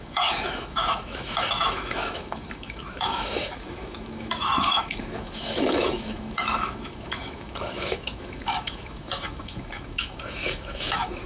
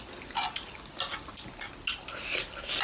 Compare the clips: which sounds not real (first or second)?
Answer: first